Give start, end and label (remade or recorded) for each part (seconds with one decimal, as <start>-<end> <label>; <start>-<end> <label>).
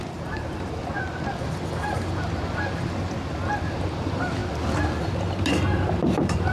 0.0-0.8 remade; 0.8-3.6 recorded; 3.6-4.4 remade; 4.4-6.0 recorded; 6.0-6.5 remade